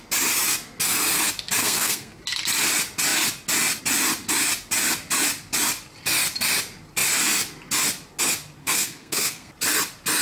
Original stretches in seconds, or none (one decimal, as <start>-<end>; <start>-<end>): 0.0-1.6; 2.2-8.6; 9.5-10.2